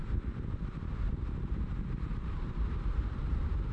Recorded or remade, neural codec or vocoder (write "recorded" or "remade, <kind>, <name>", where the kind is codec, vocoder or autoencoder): recorded